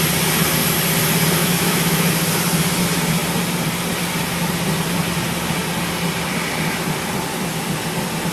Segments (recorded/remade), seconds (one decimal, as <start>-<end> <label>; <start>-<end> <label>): 0.0-1.4 recorded; 1.4-2.1 remade; 2.1-8.3 recorded